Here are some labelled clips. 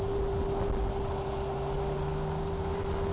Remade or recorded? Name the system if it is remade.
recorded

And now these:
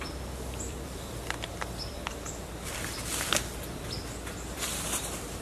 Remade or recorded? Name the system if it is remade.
remade, vocoder, BigVGAN v2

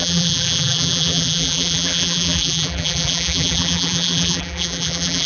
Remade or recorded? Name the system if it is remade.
remade, vocoder, BigVGAN v2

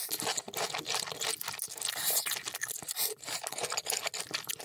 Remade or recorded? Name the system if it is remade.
recorded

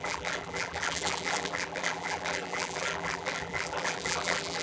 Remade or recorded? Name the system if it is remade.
remade, vocoder, BigVGAN v2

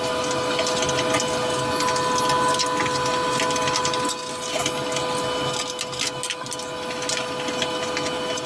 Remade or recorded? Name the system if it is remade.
recorded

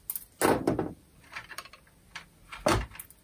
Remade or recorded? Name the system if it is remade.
recorded